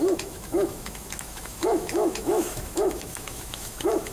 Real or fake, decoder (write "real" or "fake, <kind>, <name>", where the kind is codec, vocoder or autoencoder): fake, autoencoder, DAC-VAE